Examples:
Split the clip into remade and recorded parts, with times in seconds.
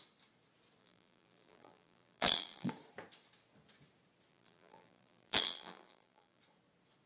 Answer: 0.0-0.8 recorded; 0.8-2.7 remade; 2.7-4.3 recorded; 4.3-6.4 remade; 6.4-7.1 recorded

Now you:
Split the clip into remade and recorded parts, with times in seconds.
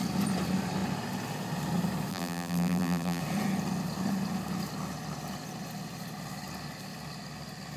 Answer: 0.0-2.1 recorded; 2.1-3.2 remade; 3.2-7.8 recorded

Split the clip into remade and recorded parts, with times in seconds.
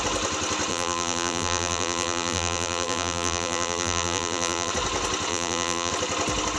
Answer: 0.0-0.7 recorded; 0.7-4.7 remade; 4.7-5.3 recorded; 5.3-5.9 remade; 5.9-6.6 recorded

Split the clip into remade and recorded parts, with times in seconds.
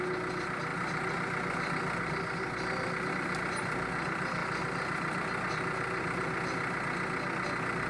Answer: 0.0-7.9 recorded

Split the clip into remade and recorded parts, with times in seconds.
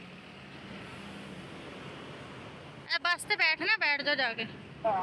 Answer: 0.0-5.0 recorded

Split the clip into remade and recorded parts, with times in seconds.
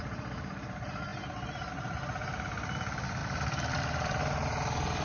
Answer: 0.0-3.2 recorded; 3.2-4.2 remade; 4.2-5.0 recorded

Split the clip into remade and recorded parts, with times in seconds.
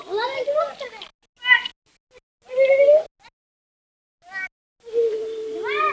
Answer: 0.0-5.9 recorded